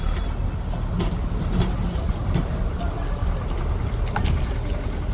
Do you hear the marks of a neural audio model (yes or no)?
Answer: no